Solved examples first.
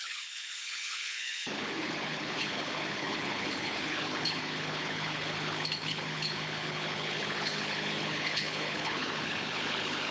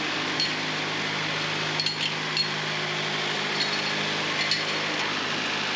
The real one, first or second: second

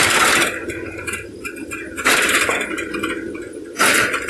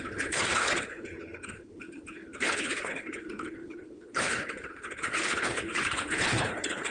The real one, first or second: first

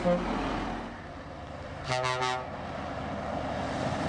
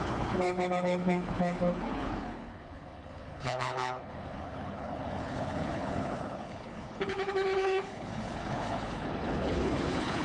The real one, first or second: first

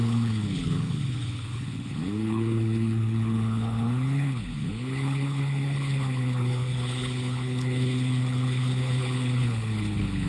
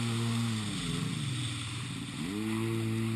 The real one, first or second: second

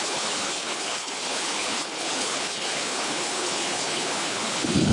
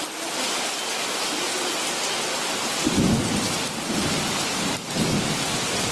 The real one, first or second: second